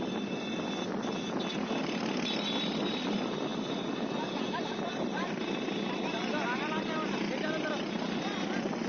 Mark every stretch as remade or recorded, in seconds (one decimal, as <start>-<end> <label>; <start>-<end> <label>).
0.0-8.9 recorded